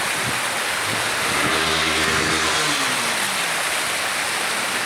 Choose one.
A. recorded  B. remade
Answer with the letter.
A